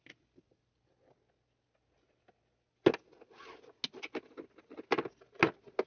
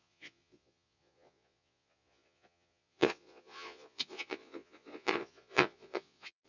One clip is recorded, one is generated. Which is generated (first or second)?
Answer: second